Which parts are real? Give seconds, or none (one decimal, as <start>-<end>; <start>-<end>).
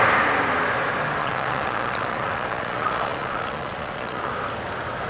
0.0-1.2; 4.3-5.1